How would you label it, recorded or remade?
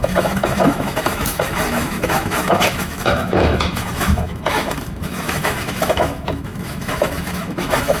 remade